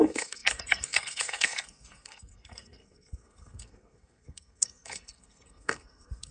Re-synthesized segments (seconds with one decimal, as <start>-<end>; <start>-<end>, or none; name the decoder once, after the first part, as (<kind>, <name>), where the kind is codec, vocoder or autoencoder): 0.0-6.3 (codec, SNAC)